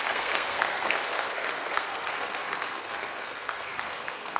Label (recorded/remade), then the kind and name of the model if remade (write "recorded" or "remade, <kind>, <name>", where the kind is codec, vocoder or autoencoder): remade, codec, SNAC